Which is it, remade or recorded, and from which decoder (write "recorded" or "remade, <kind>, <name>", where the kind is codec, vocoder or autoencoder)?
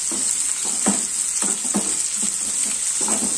recorded